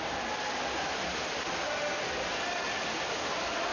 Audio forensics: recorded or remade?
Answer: remade